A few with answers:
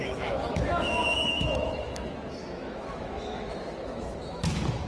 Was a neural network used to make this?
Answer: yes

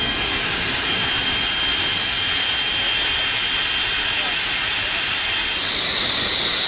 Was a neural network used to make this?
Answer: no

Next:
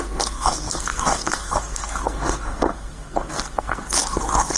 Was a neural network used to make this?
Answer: yes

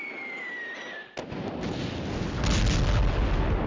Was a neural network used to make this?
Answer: no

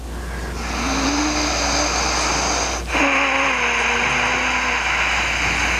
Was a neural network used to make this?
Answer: no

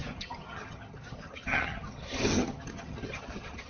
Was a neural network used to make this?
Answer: yes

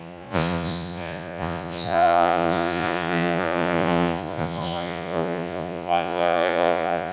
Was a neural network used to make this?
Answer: yes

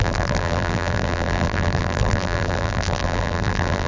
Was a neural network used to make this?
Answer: yes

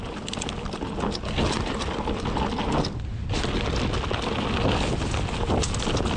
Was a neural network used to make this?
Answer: no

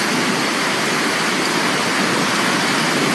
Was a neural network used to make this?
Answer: no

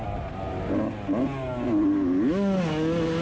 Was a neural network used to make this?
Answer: no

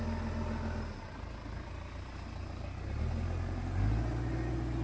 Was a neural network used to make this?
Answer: no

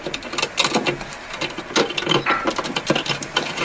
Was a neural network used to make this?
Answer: no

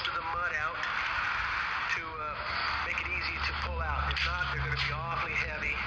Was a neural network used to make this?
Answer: no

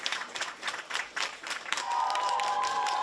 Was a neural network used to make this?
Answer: yes